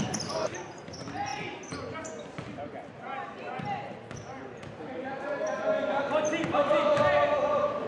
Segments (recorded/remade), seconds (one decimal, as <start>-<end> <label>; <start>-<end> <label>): 0.0-7.9 recorded